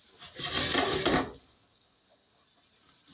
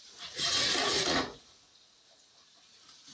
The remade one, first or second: second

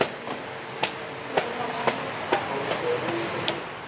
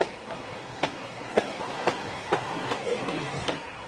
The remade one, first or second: second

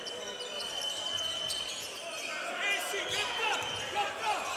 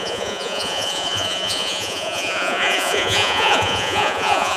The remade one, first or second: second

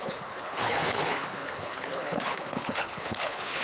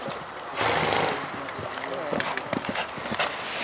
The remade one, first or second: first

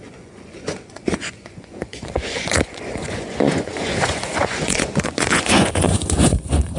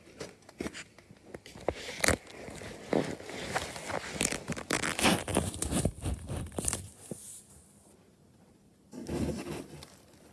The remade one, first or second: first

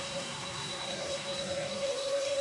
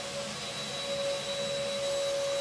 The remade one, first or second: first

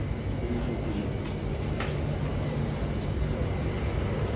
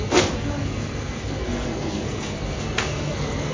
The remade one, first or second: second